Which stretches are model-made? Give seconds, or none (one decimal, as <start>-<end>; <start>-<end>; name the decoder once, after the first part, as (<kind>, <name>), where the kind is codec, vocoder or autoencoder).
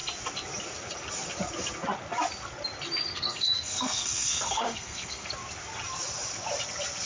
3.1-5.3 (codec, SNAC)